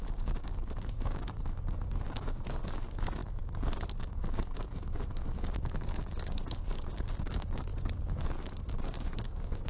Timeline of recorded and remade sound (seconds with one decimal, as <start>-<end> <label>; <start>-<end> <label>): 0.0-9.7 remade

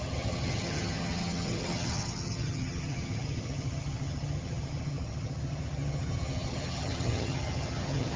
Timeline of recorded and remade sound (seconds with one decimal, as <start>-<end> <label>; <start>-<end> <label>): 0.0-8.2 remade